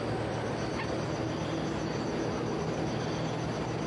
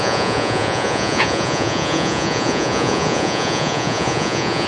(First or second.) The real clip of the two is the first